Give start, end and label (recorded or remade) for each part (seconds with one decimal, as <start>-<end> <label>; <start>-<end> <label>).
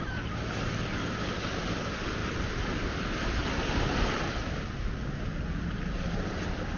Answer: 0.0-2.2 recorded; 2.2-4.2 remade; 4.2-6.8 recorded